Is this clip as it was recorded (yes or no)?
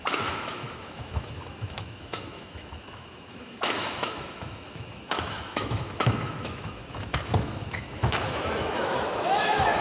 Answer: no